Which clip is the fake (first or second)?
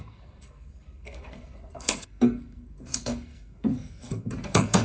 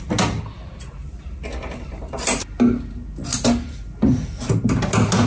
first